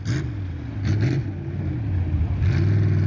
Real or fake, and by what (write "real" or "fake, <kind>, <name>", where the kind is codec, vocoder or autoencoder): real